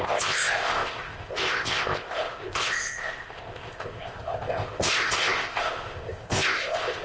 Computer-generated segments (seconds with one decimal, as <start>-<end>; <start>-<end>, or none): 0.0-7.0